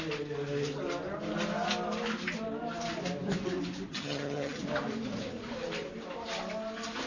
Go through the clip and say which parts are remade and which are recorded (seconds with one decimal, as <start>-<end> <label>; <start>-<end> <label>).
0.0-3.9 recorded; 3.9-4.6 remade; 4.6-7.1 recorded